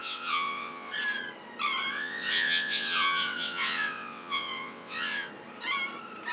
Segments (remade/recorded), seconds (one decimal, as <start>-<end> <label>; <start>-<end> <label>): 0.0-0.9 remade; 0.9-1.9 recorded; 1.9-5.3 remade; 5.3-6.3 recorded